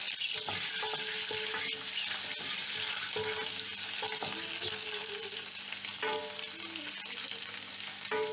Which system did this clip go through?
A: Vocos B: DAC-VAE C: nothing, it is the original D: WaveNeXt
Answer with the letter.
C